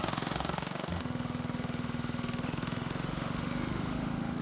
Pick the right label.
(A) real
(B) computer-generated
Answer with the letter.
B